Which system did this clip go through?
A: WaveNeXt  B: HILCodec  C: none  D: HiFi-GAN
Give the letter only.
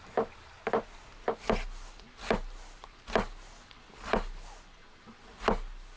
C